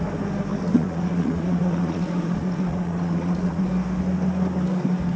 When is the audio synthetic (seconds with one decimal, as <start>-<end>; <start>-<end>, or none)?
0.5-3.6